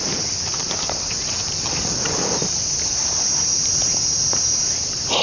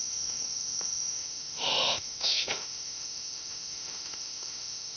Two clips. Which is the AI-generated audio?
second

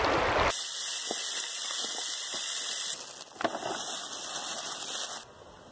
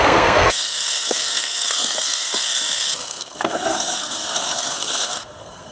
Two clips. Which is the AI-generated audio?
second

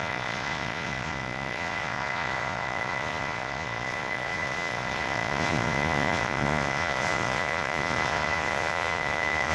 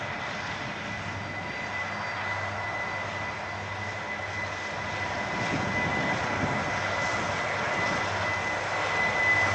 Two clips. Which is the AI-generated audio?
first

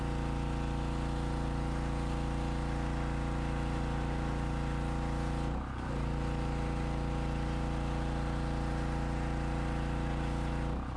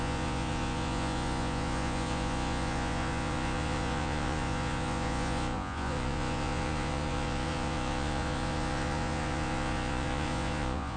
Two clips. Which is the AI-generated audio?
second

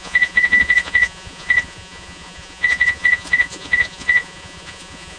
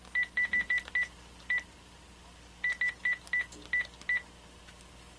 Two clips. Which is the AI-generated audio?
first